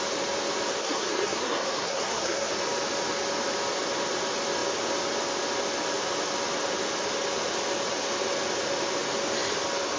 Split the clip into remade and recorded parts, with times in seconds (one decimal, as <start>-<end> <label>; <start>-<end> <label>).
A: 0.0-0.8 recorded; 0.8-2.5 remade; 2.5-10.0 recorded